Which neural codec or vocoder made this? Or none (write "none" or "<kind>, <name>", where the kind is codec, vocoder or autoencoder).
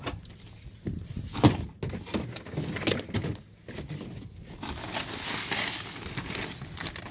none